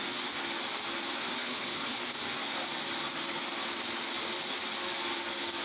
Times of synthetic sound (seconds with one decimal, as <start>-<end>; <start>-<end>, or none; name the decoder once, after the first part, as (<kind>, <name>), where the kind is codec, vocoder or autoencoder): 1.4-2.0 (codec, HILCodec)